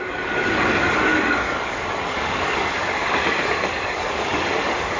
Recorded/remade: remade